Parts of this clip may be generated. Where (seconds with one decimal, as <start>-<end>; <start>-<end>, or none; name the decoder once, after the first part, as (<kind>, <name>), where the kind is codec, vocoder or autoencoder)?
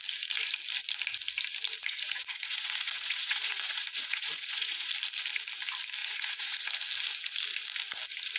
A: 1.8-4.9 (vocoder, Vocos); 6.0-6.6